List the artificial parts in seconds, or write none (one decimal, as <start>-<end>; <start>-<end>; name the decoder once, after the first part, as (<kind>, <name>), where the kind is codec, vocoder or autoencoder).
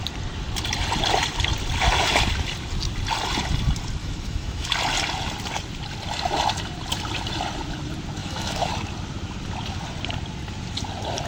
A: 4.0-4.7 (autoencoder, DAC-VAE); 8.2-8.7